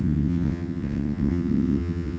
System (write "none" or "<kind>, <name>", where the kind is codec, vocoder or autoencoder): vocoder, WaveNeXt